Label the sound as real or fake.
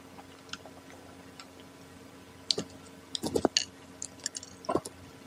real